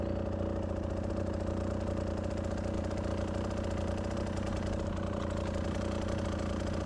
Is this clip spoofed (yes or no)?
no